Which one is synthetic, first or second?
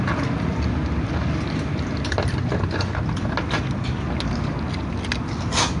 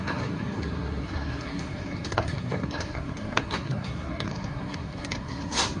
second